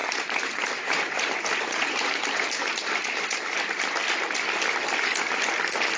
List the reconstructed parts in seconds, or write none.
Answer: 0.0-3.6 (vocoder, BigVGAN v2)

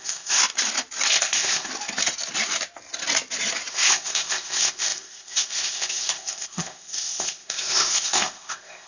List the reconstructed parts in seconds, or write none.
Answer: 0.0-0.4 (codec, ZipCodec); 1.1-1.7; 3.7-8.9

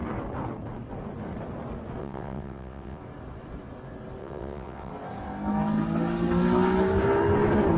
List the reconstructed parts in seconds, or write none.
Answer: 2.0-3.0 (vocoder, WaveNeXt); 4.2-4.9

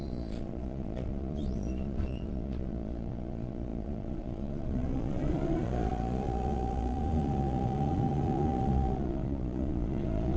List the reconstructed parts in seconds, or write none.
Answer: 0.0-10.4 (vocoder, Vocos)

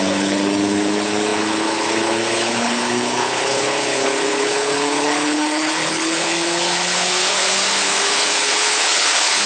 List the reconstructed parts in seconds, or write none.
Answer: 0.0-9.5 (codec, HILCodec)

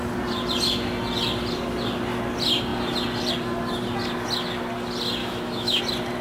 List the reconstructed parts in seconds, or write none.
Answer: 5.2-5.8 (autoencoder, DAC-VAE)